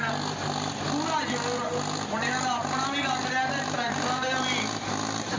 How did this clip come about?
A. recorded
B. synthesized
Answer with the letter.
A